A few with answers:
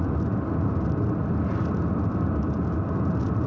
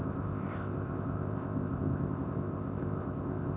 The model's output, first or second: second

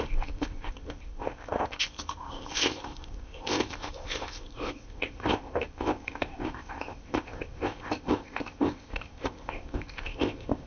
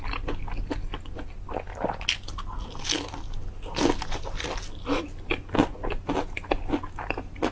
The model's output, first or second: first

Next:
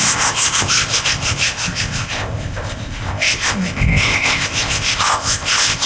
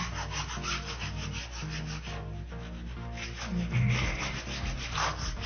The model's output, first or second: first